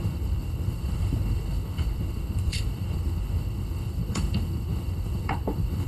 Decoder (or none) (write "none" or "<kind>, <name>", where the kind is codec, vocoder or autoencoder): codec, HILCodec